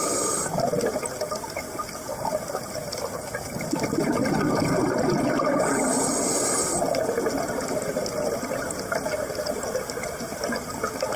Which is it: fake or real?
real